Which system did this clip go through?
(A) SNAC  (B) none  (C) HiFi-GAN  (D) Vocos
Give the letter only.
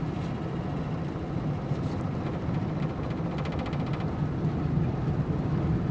B